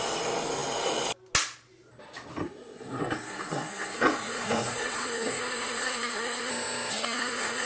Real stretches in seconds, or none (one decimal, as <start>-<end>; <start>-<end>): 0.0-2.4; 6.5-6.9